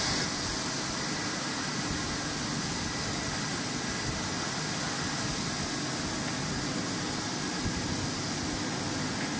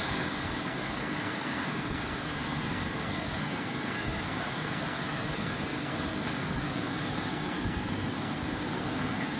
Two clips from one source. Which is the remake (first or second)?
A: second